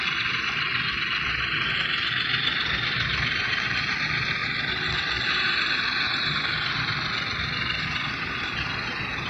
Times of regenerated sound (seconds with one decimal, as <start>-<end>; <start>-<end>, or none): none